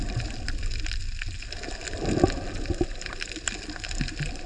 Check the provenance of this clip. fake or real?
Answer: real